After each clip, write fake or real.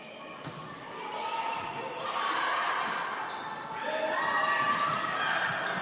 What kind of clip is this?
real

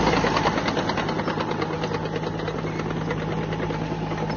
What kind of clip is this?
real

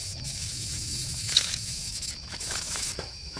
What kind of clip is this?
fake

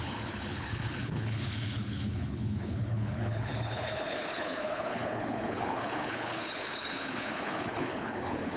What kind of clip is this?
fake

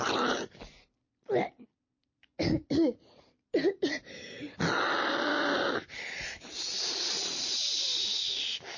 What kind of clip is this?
real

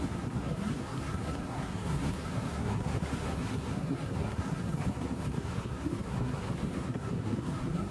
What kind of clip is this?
fake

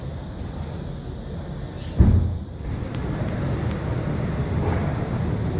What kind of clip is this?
real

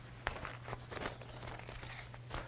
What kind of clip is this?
real